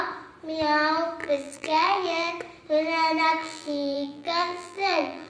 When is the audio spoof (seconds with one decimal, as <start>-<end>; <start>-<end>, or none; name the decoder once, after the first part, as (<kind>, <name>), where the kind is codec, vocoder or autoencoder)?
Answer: 1.2-2.3 (vocoder, BigVGAN v2); 3.4-5.3